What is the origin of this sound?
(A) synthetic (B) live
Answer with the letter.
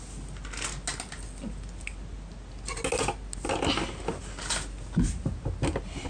B